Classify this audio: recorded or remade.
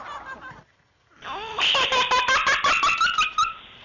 remade